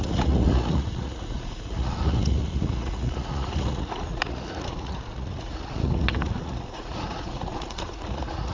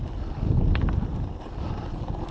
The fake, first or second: first